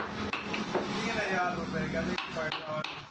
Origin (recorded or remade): recorded